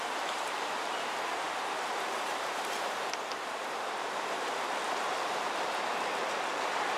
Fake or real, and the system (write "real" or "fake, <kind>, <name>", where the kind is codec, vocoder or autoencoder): fake, vocoder, BigVGAN v2